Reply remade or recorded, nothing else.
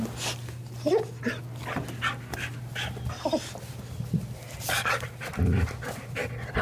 recorded